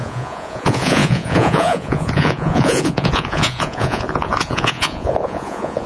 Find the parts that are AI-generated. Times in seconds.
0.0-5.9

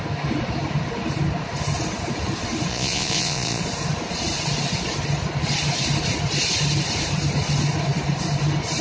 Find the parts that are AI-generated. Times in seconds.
2.7-3.6

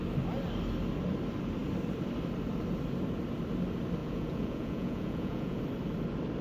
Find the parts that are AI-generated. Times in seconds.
4.0-5.6

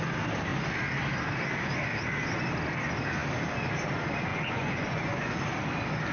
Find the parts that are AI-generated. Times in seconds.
4.3-5.3

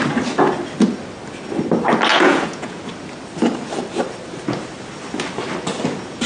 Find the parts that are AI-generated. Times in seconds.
2.1-2.8